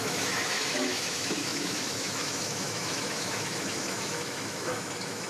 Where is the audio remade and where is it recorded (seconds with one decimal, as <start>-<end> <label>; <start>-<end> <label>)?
0.0-5.3 remade